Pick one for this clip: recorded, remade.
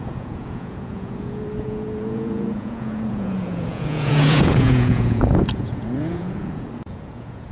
remade